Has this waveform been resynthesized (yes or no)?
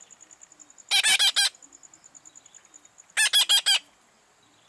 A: no